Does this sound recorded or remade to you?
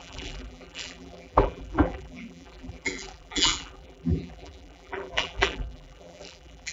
remade